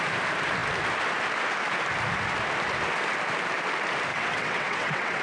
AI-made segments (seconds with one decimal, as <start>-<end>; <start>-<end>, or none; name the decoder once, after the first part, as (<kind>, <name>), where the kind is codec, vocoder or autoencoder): 4.1-5.2 (vocoder, WaveNeXt)